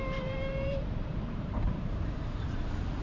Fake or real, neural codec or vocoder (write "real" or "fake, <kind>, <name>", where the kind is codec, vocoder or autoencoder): fake, vocoder, BigVGAN v2